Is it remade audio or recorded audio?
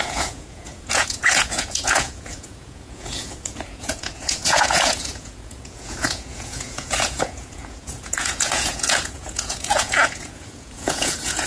remade